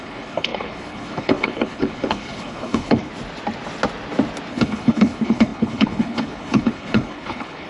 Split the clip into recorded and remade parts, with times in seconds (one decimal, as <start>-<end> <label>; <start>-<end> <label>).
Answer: 0.0-3.1 remade; 3.1-4.5 recorded; 4.5-7.7 remade